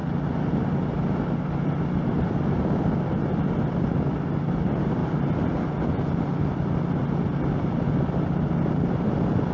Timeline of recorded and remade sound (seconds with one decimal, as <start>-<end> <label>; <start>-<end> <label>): 0.0-9.5 recorded